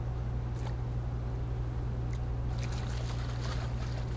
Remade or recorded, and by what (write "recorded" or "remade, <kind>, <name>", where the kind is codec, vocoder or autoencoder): recorded